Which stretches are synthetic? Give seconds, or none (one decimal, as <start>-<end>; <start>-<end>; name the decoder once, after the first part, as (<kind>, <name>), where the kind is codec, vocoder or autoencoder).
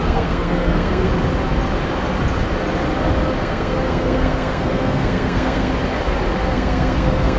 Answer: 0.0-1.1 (codec, SNAC); 3.4-5.7; 6.5-7.4